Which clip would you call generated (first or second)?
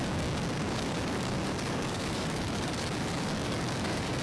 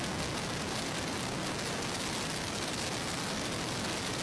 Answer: first